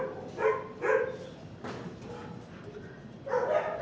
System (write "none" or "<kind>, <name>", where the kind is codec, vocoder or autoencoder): none